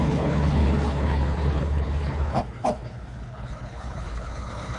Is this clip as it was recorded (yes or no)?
no